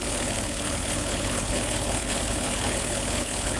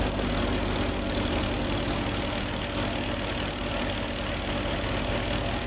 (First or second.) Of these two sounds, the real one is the second